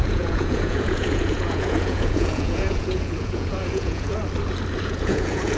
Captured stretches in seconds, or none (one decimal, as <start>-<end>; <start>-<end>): 4.2-4.8